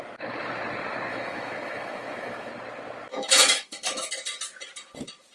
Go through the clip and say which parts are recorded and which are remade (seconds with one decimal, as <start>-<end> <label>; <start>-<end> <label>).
0.0-1.1 recorded; 1.1-2.5 remade; 2.5-3.1 recorded; 3.1-4.1 remade; 4.1-5.3 recorded